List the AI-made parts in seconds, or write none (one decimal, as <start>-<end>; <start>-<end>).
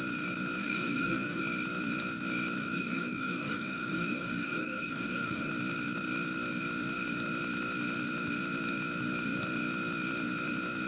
0.6-1.4; 2.6-5.5